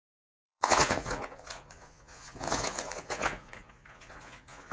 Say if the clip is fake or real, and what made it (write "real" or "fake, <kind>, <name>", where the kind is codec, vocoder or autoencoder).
fake, vocoder, Vocos